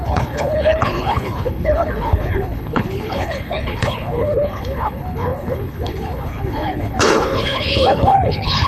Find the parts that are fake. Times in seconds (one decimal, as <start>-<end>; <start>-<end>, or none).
0.0-8.7